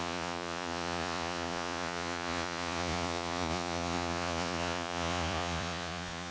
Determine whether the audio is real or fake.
fake